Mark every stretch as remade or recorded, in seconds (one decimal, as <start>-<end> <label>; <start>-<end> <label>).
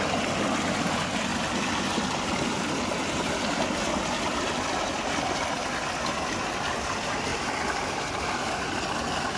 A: 0.0-9.4 recorded